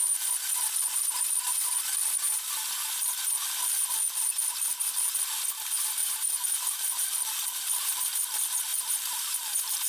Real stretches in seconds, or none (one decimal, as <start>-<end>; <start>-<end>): 0.0-6.0; 7.9-8.7